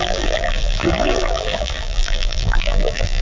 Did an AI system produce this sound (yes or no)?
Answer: yes